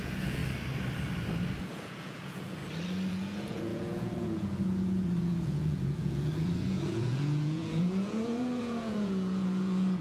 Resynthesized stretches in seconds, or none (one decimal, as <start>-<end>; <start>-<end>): 0.0-0.4; 1.6-2.6; 3.1-10.0